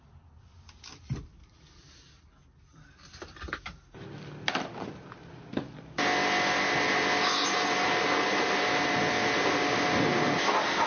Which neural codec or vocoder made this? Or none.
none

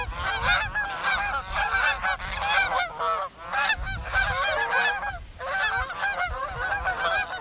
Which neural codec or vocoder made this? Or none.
none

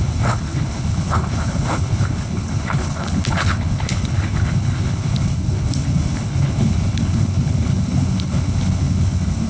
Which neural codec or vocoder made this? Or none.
codec, HILCodec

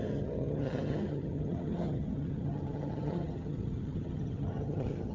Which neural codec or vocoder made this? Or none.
vocoder, HiFi-GAN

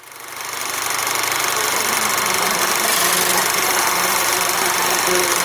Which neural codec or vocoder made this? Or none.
none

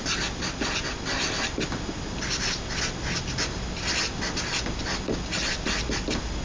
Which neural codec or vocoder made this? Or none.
none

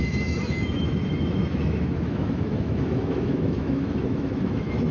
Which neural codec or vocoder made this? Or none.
autoencoder, DAC-VAE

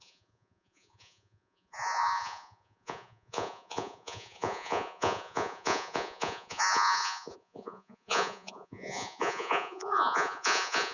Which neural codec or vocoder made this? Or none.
vocoder, Vocos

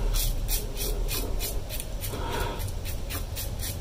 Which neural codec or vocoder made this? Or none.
none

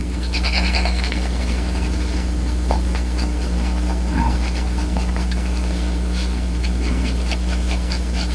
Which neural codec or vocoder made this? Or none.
codec, SNAC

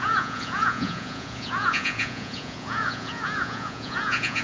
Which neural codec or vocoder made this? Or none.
vocoder, Vocos